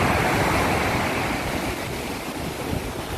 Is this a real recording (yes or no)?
yes